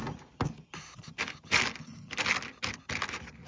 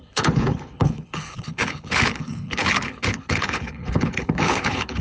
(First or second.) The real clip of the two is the first